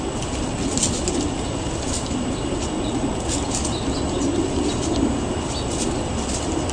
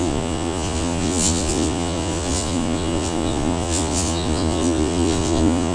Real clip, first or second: first